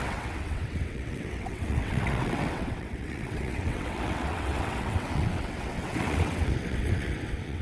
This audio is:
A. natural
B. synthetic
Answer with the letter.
B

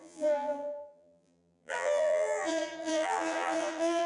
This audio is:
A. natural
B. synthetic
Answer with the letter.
B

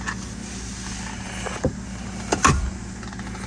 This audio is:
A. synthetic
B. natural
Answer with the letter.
B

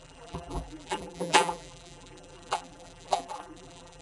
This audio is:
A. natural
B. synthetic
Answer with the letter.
B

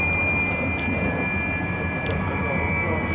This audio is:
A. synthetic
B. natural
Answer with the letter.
B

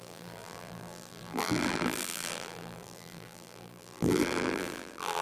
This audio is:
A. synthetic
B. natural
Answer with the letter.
A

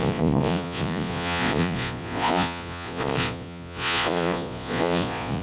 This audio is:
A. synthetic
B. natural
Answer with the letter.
A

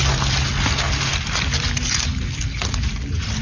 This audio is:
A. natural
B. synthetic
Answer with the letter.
A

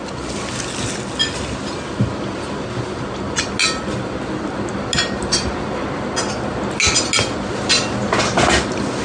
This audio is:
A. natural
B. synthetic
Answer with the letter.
A